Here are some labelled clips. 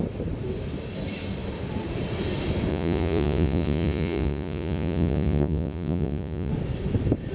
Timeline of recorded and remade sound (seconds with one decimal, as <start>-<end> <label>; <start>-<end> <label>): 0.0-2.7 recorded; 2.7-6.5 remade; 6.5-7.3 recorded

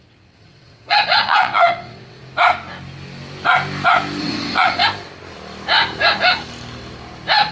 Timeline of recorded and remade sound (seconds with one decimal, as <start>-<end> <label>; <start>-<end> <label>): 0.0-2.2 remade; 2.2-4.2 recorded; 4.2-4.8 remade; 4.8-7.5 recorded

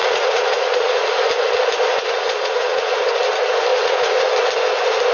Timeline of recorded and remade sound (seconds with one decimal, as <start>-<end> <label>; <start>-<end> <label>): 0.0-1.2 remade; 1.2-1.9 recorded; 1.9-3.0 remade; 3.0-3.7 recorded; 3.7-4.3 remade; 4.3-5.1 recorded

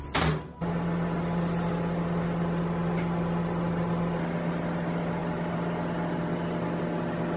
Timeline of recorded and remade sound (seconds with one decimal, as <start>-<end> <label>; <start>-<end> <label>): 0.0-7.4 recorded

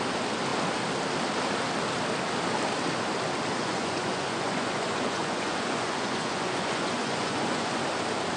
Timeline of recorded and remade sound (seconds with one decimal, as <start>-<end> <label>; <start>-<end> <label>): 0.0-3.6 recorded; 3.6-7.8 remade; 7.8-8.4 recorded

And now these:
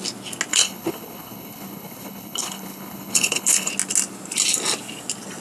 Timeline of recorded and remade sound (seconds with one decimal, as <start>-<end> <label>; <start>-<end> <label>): 0.0-0.5 recorded; 0.5-3.7 remade; 3.7-5.4 recorded